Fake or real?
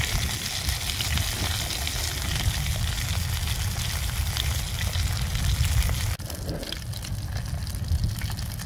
real